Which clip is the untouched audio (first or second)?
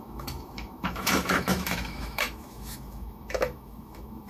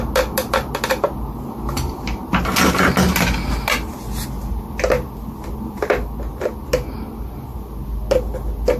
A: second